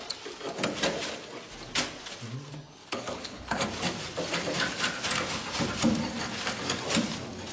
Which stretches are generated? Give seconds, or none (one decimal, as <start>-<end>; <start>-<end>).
2.8-3.6